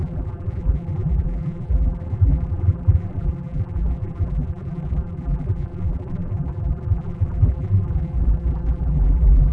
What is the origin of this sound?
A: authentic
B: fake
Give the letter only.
B